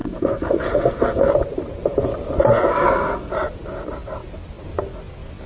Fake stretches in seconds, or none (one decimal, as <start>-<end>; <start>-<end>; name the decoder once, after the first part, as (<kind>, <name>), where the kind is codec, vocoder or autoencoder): 0.0-1.3 (codec, SNAC); 2.7-3.3